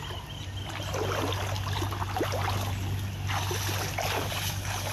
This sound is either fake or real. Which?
real